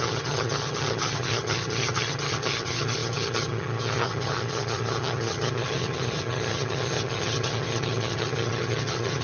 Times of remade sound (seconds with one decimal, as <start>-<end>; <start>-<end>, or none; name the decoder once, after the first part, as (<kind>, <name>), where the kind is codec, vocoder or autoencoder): 0.0-9.2 (vocoder, HiFi-GAN)